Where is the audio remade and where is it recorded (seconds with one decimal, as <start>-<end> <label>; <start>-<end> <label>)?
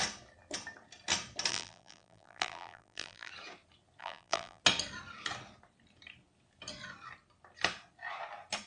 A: 0.0-1.5 recorded; 1.5-3.3 remade; 3.3-4.0 recorded; 4.0-4.6 remade; 4.6-8.7 recorded